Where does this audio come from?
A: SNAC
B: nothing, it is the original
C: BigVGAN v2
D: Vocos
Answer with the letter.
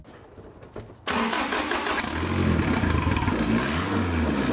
B